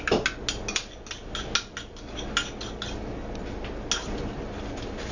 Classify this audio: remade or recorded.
recorded